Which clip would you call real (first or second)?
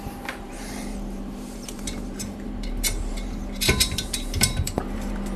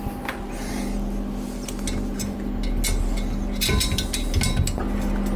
second